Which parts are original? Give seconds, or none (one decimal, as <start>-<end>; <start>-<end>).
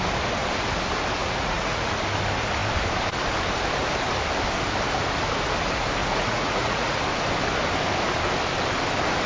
0.0-1.2; 1.9-6.0; 7.0-9.3